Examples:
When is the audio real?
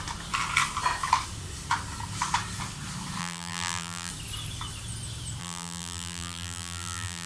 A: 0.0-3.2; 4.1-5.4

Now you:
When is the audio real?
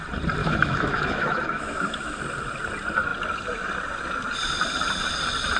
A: 0.0-0.4; 2.2-5.6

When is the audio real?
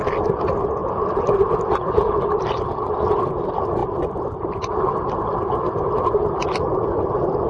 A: 0.0-0.8; 3.2-3.8; 6.0-7.5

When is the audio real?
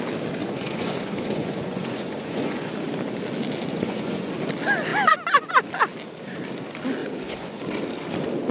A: 0.0-0.4; 2.7-3.7; 4.3-7.0; 7.6-8.5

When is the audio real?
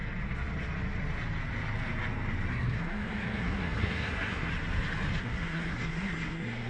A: 0.0-2.5; 4.5-5.2